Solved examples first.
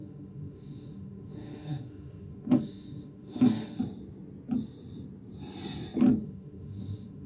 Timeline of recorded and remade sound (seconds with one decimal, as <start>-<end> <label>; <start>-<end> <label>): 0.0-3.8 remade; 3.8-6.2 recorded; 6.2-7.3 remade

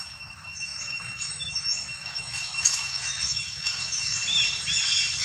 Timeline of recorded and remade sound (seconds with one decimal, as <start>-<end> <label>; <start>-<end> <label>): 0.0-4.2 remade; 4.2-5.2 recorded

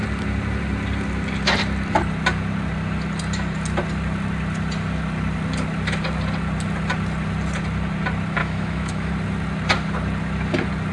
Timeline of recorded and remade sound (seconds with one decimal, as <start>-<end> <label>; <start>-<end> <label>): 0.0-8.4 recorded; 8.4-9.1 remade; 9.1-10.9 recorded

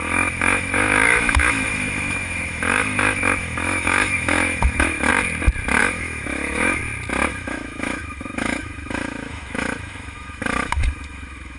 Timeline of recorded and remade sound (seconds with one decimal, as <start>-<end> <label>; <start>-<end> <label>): 0.0-5.1 remade; 5.1-5.8 recorded; 5.8-6.8 remade; 6.8-7.3 recorded; 7.3-11.6 remade

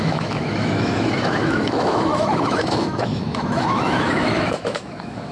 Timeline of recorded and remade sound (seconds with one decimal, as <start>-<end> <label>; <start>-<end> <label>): 0.0-5.3 remade

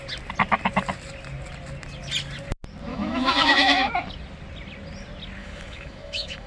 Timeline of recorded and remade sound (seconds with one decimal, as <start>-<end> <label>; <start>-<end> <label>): 0.0-2.9 recorded; 2.9-3.9 remade; 3.9-5.4 recorded; 5.4-6.5 remade

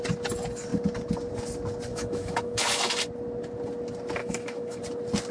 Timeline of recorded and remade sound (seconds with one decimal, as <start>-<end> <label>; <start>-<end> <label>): 0.0-1.9 recorded; 1.9-2.9 remade; 2.9-4.2 recorded; 4.2-4.8 remade; 4.8-5.3 recorded